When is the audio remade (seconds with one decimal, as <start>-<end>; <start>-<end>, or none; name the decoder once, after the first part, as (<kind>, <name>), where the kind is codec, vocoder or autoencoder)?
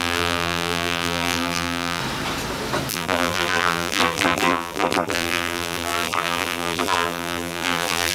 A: 0.0-2.0 (vocoder, BigVGAN v2); 2.9-8.1